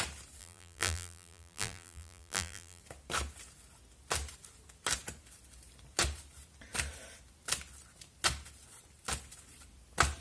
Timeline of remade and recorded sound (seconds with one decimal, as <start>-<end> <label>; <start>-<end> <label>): 0.0-0.4 recorded; 0.4-2.8 remade; 2.8-10.2 recorded